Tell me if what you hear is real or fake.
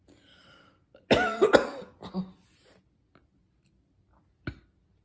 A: real